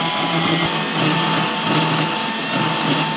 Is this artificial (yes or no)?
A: no